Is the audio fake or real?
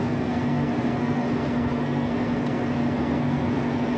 fake